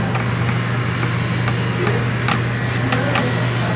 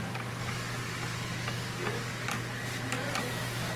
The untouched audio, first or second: first